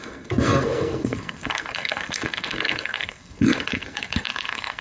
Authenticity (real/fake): fake